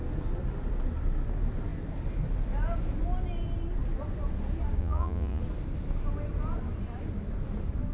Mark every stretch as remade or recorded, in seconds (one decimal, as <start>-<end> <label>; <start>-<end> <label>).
0.0-4.8 recorded; 4.8-5.4 remade; 5.4-7.9 recorded

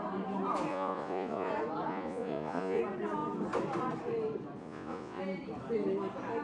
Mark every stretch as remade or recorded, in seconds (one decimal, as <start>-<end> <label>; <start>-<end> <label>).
0.0-0.7 recorded; 0.7-1.5 remade; 1.5-1.9 recorded; 1.9-2.8 remade; 2.8-4.6 recorded; 4.6-5.2 remade; 5.2-6.4 recorded

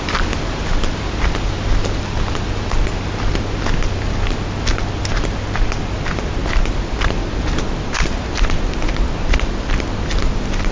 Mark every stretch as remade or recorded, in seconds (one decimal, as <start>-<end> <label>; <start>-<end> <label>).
0.0-10.7 recorded

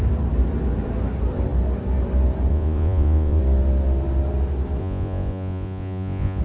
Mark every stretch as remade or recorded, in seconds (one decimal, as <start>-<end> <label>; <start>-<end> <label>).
0.0-2.5 recorded; 2.5-3.4 remade; 3.4-4.8 recorded; 4.8-6.4 remade

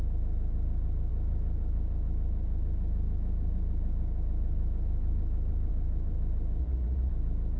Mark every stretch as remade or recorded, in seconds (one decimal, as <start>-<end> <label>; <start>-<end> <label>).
0.0-6.6 recorded; 6.6-7.1 remade; 7.1-7.6 recorded

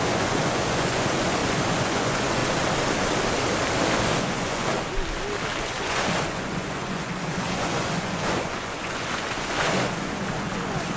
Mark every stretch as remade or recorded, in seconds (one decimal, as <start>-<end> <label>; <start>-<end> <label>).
0.0-2.4 remade; 2.4-3.9 recorded; 3.9-4.7 remade; 4.7-5.6 recorded; 5.6-11.0 remade

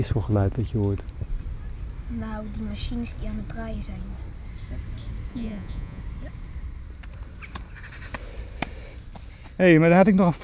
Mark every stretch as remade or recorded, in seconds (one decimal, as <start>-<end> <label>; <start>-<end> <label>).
0.0-5.3 recorded; 5.3-6.0 remade; 6.0-10.4 recorded